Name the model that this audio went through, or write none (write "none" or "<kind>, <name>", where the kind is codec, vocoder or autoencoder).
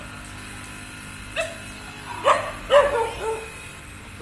none